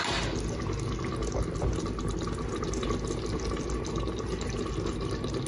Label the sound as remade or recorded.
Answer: recorded